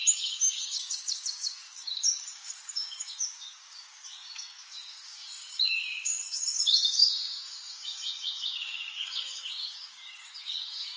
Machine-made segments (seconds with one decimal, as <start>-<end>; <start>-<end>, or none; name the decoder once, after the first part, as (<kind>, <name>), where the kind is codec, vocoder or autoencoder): 0.0-11.0 (codec, DAC)

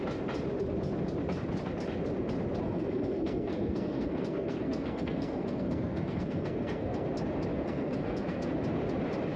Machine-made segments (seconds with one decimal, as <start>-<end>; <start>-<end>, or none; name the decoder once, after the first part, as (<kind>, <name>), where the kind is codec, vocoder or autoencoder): 2.6-7.1 (codec, SNAC); 7.5-8.5

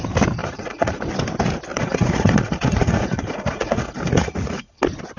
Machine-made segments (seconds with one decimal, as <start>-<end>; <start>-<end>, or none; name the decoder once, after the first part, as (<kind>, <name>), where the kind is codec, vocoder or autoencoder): 0.4-1.0 (vocoder, Vocos); 1.7-4.8